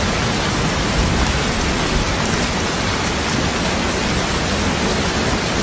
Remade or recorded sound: recorded